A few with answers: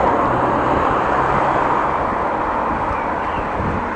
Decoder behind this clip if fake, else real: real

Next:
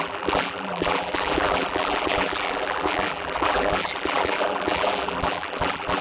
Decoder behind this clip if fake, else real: fake, vocoder, BigVGAN v2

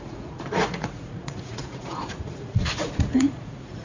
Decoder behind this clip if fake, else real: fake, vocoder, Vocos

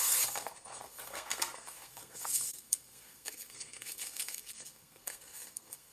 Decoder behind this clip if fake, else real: fake, codec, SNAC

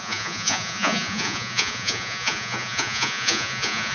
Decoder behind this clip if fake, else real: fake, vocoder, Vocos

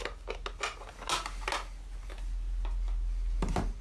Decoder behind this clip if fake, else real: real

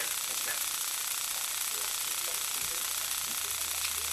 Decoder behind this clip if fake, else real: real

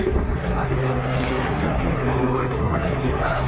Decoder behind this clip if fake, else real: fake, codec, SNAC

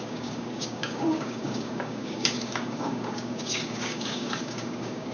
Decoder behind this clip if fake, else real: fake, codec, DAC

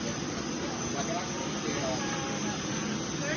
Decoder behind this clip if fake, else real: real